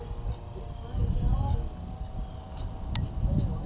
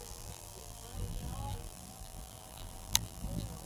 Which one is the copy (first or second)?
second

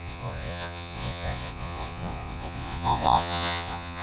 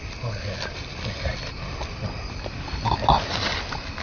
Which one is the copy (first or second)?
first